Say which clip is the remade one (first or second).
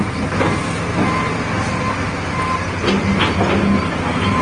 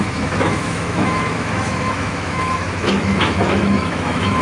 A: second